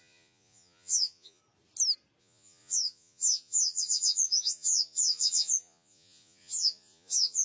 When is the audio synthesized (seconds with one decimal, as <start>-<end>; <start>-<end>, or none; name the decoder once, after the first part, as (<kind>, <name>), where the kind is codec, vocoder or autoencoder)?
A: 0.0-1.4 (vocoder, Vocos); 2.2-7.4

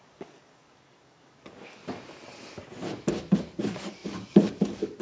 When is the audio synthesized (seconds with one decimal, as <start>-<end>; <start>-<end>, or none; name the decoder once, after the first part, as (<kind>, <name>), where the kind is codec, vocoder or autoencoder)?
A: 0.0-1.8 (codec, DAC); 3.6-5.0

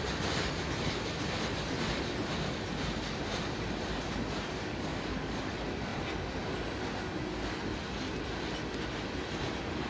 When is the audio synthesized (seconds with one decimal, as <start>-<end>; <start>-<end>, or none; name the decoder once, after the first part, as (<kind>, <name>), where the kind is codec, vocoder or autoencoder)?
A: 4.7-5.4 (codec, DAC)

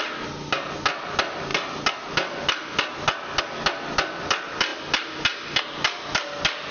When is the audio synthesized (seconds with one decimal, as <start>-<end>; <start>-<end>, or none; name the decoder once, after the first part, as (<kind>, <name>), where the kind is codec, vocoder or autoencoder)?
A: none

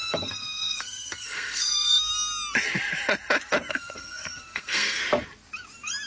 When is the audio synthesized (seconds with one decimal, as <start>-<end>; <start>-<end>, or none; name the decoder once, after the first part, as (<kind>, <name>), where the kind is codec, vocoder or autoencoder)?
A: 0.0-2.1 (codec, SNAC); 3.7-5.0